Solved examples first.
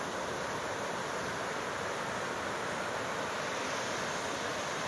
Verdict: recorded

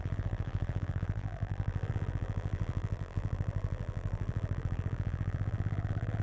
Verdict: remade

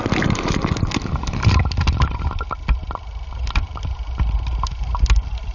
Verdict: recorded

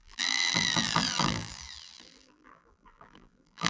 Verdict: remade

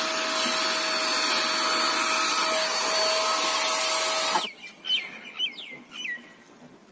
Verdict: recorded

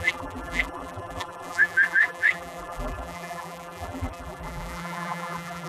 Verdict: remade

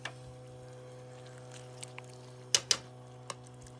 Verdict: recorded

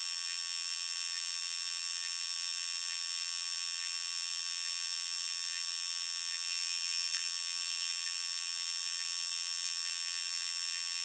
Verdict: remade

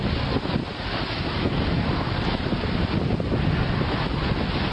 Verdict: recorded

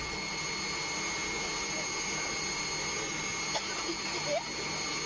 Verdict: recorded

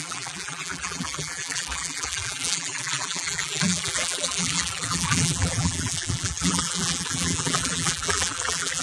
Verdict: remade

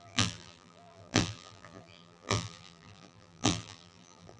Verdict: remade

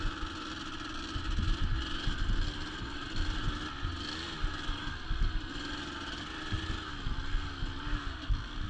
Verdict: recorded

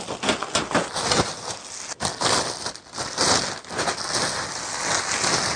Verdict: recorded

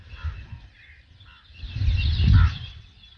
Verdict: recorded